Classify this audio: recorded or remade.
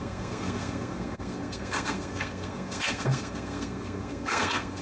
remade